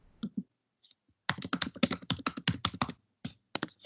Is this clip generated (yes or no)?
no